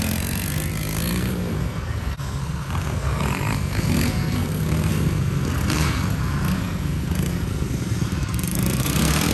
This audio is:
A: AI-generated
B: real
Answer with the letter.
A